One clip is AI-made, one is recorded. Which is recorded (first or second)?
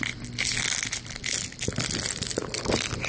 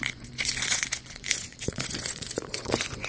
first